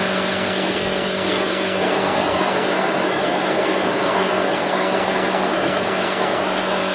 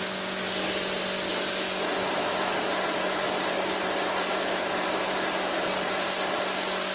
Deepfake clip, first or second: first